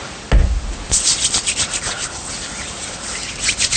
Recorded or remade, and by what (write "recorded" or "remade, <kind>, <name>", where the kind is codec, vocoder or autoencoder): recorded